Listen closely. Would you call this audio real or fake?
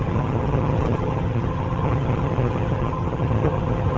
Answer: fake